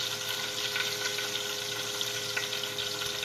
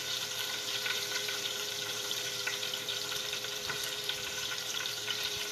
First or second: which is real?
first